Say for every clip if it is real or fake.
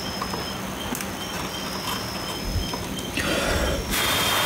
real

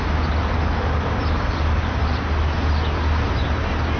real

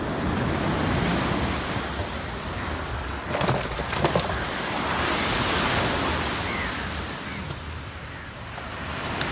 real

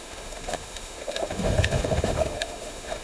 fake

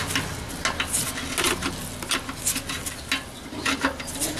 real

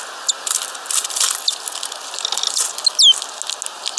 real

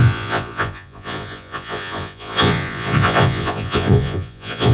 fake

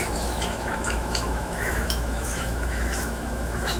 fake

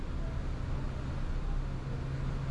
real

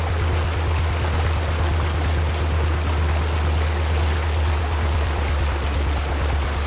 real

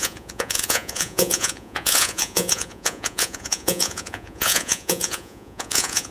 fake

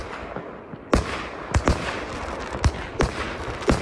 real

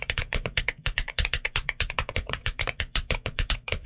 fake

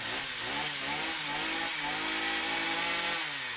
real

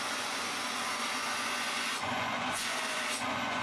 fake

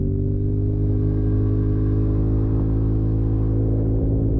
real